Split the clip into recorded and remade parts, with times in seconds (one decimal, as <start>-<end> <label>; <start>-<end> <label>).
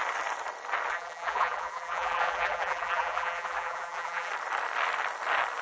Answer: 0.0-0.9 recorded; 0.9-4.3 remade; 4.3-5.6 recorded